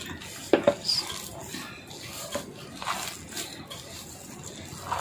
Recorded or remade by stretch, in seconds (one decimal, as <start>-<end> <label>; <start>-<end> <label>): 0.0-5.0 recorded